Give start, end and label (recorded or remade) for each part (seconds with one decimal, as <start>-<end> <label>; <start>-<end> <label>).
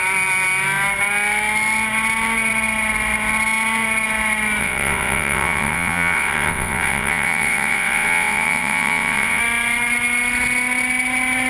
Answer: 0.0-4.6 recorded; 4.6-9.4 remade; 9.4-11.5 recorded